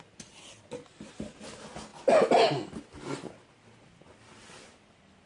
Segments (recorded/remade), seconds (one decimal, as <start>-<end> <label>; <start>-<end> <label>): 0.0-5.3 recorded